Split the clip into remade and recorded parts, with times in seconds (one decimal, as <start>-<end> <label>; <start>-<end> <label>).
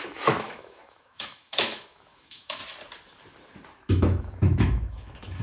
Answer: 0.0-2.6 remade; 2.6-3.9 recorded; 3.9-5.4 remade